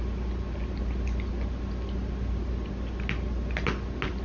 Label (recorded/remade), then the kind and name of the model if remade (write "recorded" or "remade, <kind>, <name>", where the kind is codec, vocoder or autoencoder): recorded